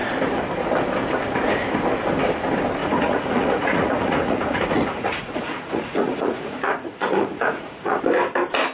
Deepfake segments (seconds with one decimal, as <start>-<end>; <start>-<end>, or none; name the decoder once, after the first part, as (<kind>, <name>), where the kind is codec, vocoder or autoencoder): 2.8-8.0 (vocoder, Vocos)